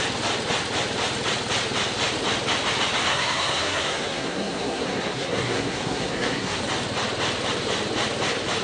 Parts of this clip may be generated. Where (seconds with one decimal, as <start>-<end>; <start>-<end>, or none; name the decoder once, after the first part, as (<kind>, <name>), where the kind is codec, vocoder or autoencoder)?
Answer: 3.1-6.6 (codec, SNAC)